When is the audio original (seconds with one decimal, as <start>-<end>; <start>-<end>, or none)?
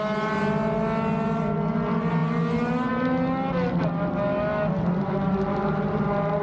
0.0-6.4